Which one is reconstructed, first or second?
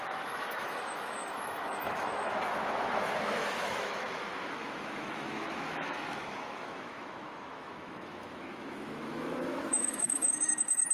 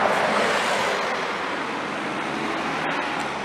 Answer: first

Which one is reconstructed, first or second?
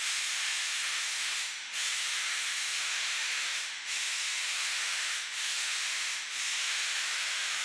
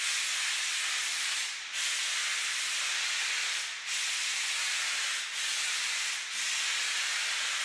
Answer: first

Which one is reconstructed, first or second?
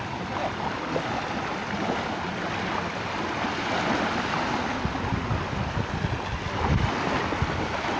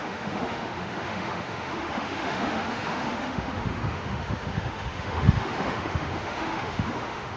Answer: second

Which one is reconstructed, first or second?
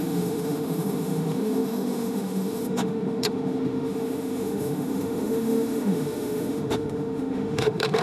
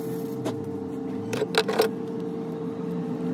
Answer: first